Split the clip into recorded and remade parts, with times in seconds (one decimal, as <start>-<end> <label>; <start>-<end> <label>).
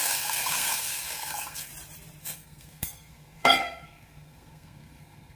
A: 0.0-1.7 remade; 1.7-2.2 recorded; 2.2-5.4 remade